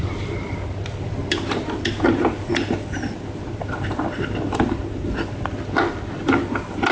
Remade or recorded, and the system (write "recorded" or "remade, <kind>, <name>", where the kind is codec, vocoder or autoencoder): recorded